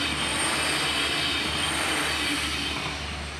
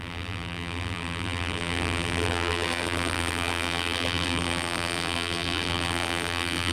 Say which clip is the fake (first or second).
second